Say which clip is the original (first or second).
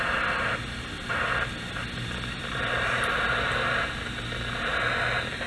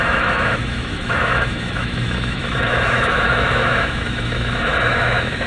first